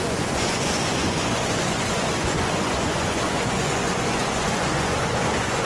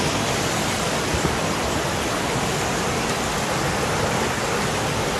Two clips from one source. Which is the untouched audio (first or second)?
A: second